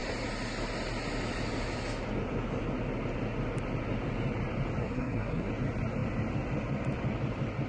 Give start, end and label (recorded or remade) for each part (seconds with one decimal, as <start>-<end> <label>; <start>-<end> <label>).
0.0-4.8 recorded; 4.8-5.5 remade; 5.5-7.7 recorded